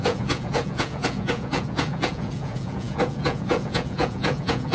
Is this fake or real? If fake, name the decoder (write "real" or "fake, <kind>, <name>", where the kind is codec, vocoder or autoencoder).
fake, vocoder, Vocos